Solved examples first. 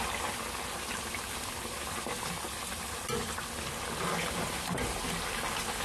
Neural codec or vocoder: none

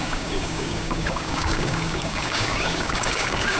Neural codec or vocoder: codec, DAC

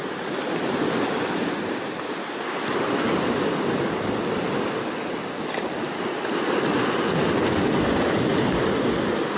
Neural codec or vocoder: none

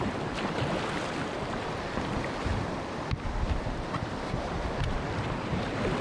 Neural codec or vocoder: none